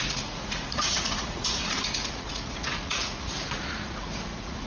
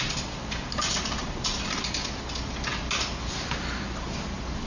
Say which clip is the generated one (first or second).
first